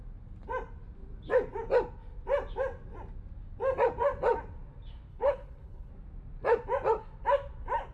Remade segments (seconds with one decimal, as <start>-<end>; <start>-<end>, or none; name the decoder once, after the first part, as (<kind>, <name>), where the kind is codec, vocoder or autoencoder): 5.1-5.9 (codec, HILCodec)